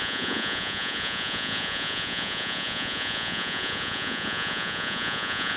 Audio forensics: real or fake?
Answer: fake